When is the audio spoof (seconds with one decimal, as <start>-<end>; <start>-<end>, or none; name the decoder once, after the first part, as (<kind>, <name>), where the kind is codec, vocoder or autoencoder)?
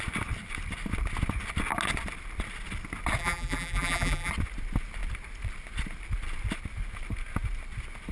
3.2-4.3 (vocoder, BigVGAN v2)